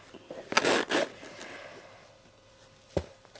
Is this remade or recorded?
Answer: recorded